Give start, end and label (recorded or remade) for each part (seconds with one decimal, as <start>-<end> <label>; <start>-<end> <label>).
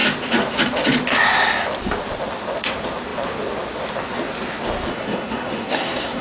0.0-4.9 recorded; 4.9-6.2 remade